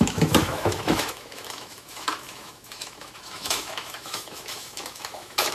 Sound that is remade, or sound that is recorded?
remade